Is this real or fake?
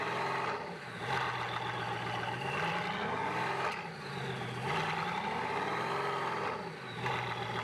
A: real